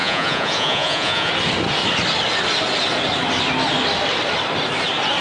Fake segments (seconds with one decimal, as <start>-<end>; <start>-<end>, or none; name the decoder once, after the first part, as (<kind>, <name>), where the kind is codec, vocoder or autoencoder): 0.0-1.3 (vocoder, Vocos)